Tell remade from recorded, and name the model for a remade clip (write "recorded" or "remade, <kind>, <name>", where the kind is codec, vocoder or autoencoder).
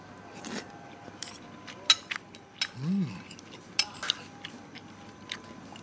recorded